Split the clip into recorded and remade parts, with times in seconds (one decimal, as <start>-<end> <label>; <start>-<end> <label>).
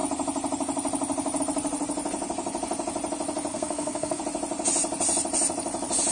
0.0-3.5 recorded; 3.5-4.2 remade; 4.2-6.1 recorded